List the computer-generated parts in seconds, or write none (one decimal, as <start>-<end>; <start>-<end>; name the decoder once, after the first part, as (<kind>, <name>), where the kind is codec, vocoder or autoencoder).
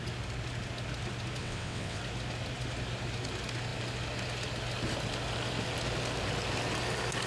1.4-2.0 (vocoder, WaveNeXt)